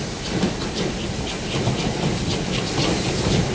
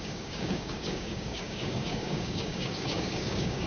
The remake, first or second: second